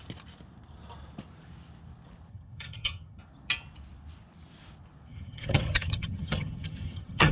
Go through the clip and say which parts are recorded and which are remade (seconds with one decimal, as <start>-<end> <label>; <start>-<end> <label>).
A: 0.0-2.3 recorded; 2.3-3.2 remade; 3.2-5.1 recorded; 5.1-7.3 remade